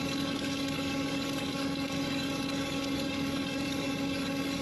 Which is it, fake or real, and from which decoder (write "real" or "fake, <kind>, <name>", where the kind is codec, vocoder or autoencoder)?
fake, codec, DAC